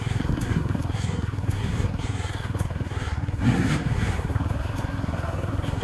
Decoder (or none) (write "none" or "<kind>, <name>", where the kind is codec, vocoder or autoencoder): codec, SNAC